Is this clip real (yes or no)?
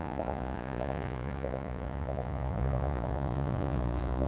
no